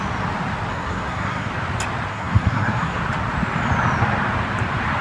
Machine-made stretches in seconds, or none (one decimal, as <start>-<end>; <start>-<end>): 0.7-1.5; 2.1-3.0